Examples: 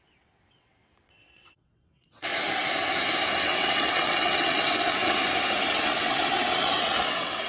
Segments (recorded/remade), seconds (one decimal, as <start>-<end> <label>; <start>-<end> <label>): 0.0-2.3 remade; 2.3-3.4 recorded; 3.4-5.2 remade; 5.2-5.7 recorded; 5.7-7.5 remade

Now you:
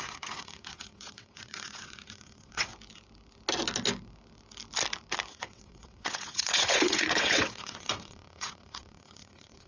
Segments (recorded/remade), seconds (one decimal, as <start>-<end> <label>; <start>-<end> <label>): 0.0-2.7 remade; 2.7-5.3 recorded; 5.3-9.7 remade

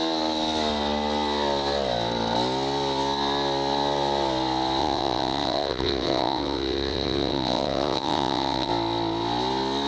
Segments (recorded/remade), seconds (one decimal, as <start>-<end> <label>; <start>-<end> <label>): 0.0-4.8 recorded; 4.8-8.7 remade; 8.7-9.9 recorded

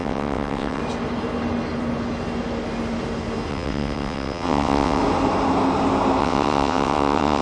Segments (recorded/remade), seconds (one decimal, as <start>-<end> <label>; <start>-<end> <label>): 0.0-0.8 remade; 0.8-3.5 recorded; 3.5-5.0 remade; 5.0-6.2 recorded; 6.2-7.4 remade

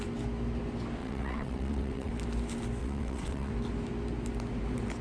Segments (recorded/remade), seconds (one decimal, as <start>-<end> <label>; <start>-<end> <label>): 0.0-1.0 recorded; 1.0-2.1 remade; 2.1-2.8 recorded; 2.8-3.5 remade; 3.5-5.0 recorded